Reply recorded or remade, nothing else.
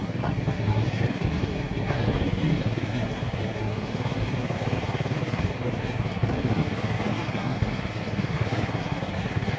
remade